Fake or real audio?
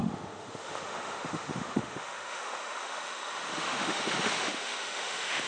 fake